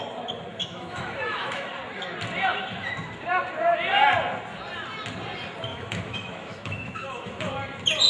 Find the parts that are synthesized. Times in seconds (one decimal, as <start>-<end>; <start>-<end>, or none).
0.5-1.7; 5.7-7.5